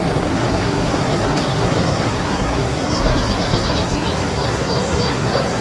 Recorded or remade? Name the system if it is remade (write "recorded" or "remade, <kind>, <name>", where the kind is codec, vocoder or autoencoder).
remade, codec, SNAC